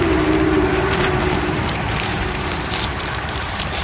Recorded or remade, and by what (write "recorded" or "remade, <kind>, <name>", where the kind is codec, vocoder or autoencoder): remade, vocoder, BigVGAN v2